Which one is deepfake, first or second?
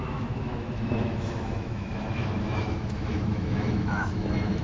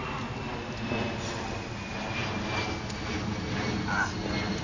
first